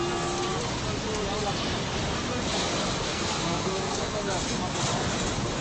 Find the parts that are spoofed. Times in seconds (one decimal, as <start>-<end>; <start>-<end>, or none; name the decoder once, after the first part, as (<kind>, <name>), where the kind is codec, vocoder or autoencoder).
3.1-4.3 (codec, SNAC)